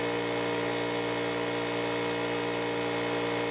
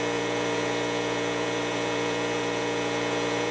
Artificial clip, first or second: second